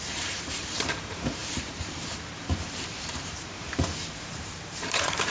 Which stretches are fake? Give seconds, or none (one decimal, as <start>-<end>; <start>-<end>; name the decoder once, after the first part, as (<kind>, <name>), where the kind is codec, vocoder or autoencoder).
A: 0.0-5.3 (vocoder, BigVGAN v2)